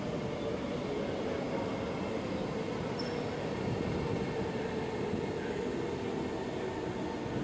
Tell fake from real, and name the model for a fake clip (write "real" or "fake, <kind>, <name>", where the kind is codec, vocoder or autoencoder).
real